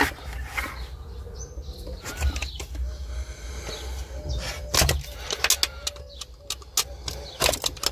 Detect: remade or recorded recorded